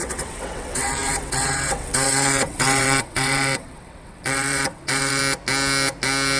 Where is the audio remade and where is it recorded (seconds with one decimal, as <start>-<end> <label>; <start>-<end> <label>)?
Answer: 0.0-5.2 remade; 5.2-6.4 recorded